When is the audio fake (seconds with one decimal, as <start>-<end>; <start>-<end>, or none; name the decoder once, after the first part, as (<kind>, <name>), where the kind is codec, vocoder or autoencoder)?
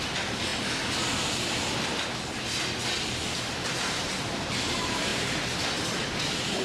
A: none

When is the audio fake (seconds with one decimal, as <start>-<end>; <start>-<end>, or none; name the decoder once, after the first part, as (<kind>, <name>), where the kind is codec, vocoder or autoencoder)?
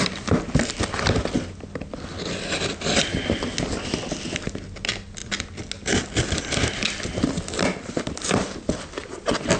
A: none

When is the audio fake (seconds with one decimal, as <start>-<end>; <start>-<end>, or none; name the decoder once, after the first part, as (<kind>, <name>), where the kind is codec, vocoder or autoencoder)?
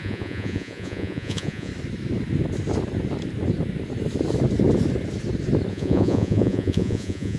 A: 0.0-1.7 (vocoder, Vocos); 5.7-7.4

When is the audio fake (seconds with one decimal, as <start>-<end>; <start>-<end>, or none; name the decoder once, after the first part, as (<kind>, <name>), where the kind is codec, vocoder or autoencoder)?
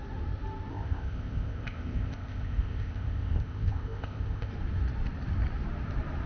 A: 0.7-4.5 (codec, ZipCodec)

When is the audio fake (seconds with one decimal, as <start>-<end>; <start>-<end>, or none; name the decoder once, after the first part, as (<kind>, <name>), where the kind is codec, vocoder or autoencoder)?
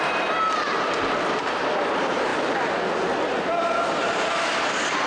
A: none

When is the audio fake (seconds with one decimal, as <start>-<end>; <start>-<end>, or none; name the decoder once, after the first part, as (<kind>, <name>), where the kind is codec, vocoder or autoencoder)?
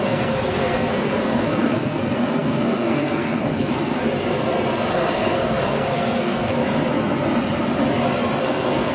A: 0.0-4.0 (codec, SNAC); 4.9-6.6; 8.4-8.9